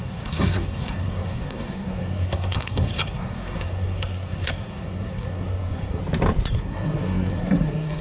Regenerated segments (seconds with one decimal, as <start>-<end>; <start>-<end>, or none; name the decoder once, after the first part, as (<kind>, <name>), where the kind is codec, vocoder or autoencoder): 0.0-6.0 (codec, SNAC); 6.5-8.0